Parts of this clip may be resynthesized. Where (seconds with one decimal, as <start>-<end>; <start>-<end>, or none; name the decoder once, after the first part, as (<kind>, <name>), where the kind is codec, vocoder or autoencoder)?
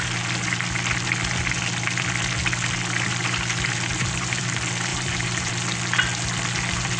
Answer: 3.2-4.4 (vocoder, BigVGAN v2); 4.9-5.5